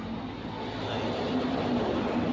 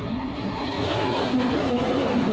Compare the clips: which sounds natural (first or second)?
first